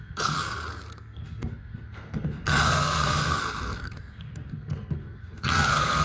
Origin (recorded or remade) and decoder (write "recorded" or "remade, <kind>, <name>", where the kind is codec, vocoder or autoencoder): remade, codec, SNAC